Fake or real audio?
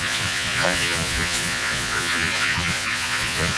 fake